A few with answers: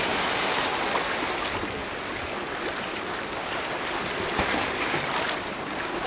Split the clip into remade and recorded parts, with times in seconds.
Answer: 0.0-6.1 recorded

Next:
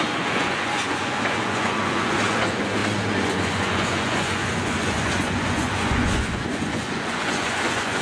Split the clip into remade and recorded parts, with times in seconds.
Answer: 0.0-8.0 remade

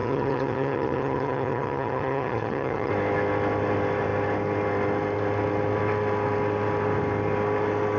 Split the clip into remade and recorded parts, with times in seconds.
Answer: 0.0-2.9 remade; 2.9-8.0 recorded

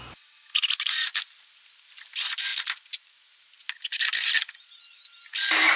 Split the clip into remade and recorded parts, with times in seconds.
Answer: 0.0-5.8 recorded

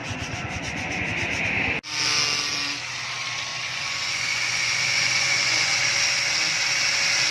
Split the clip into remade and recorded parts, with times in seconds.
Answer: 0.0-1.1 remade; 1.1-3.5 recorded; 3.5-5.9 remade; 5.9-7.3 recorded

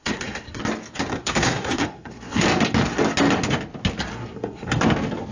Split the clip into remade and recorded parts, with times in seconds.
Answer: 0.0-0.6 remade; 0.6-1.1 recorded; 1.1-2.4 remade; 2.4-4.1 recorded; 4.1-4.8 remade; 4.8-5.3 recorded